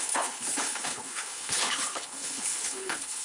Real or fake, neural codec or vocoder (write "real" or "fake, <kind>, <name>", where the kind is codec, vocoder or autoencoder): fake, codec, HILCodec